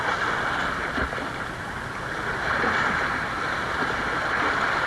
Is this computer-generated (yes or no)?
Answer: no